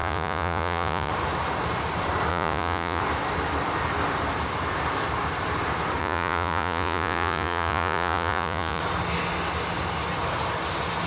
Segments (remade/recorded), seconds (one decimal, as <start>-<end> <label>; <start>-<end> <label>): 0.0-1.1 remade; 1.1-2.3 recorded; 2.3-3.0 remade; 3.0-6.0 recorded; 6.0-8.8 remade; 8.8-11.1 recorded